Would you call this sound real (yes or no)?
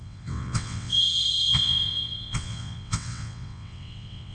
no